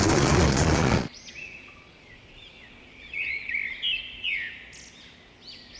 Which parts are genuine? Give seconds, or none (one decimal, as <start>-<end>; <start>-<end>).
3.5-5.8